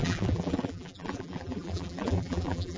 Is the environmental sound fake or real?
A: fake